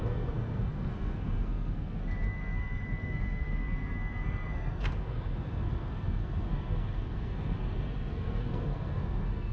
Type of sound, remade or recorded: remade